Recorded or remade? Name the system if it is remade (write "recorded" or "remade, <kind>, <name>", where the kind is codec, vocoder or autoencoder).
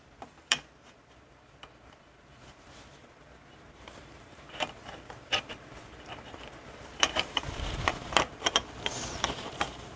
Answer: remade, vocoder, BigVGAN v2